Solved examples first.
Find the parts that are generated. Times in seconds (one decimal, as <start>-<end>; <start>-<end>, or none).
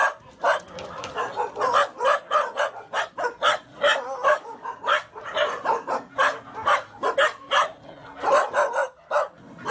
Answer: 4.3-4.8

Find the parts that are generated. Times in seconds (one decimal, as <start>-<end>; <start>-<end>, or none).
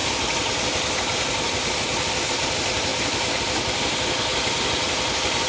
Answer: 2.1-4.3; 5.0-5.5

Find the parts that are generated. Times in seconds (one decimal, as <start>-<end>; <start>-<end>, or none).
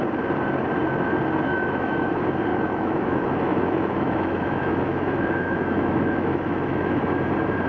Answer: 1.5-2.1; 2.5-7.0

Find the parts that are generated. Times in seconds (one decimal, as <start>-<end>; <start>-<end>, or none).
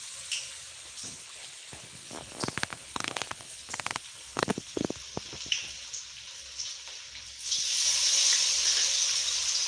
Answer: 0.7-3.7; 4.3-4.9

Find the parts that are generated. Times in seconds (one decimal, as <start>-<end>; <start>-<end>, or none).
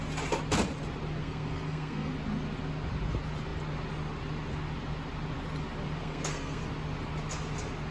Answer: 1.2-2.1; 6.0-6.6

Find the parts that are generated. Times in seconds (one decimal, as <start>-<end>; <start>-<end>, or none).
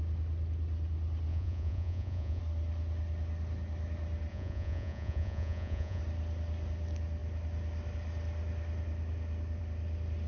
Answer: 1.3-2.4; 4.3-6.0